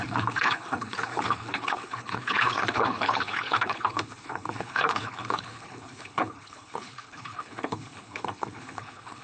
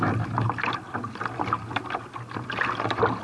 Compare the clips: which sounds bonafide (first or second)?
second